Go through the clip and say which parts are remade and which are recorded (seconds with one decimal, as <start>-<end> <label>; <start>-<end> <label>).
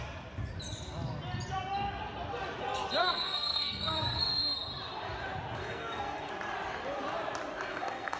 0.0-3.0 recorded; 3.0-4.4 remade; 4.4-5.6 recorded; 5.6-6.3 remade; 6.3-7.7 recorded; 7.7-8.2 remade